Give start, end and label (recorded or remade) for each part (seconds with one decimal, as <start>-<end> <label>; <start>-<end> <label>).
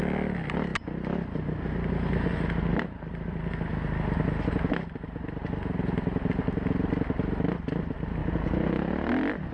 0.0-8.2 recorded; 8.2-8.8 remade; 8.8-9.5 recorded